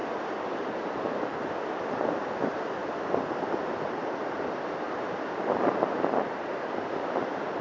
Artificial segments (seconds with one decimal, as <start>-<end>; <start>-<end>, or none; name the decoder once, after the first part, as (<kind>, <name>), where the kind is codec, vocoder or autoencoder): 0.0-1.8 (vocoder, BigVGAN v2); 2.8-7.6